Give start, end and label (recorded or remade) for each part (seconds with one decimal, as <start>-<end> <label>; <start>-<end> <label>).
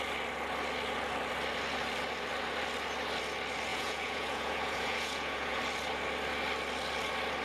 0.0-3.7 recorded; 3.7-5.6 remade; 5.6-7.4 recorded